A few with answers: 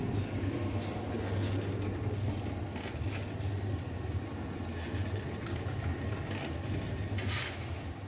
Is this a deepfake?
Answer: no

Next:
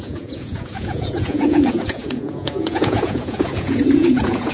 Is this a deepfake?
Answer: yes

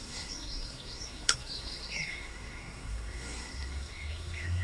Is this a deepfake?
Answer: yes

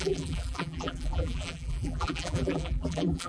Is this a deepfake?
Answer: yes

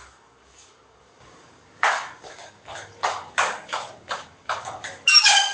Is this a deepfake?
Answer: yes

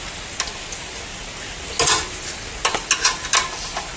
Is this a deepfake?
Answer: no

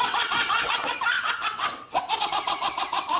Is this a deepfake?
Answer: yes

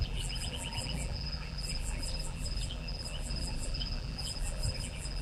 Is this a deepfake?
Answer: yes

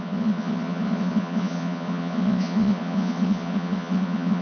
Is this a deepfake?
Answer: yes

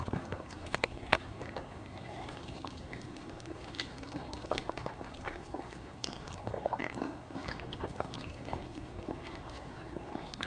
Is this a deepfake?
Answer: yes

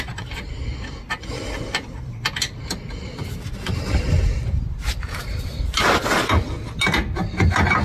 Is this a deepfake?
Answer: no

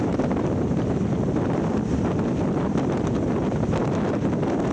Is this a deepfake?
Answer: no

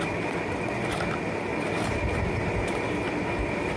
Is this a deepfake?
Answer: no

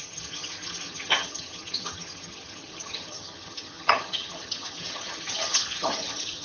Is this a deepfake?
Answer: yes